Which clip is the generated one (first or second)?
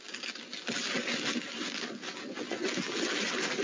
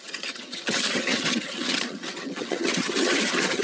second